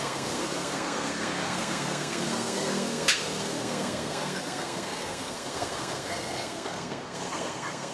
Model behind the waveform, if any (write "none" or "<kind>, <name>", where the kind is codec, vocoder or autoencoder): codec, SNAC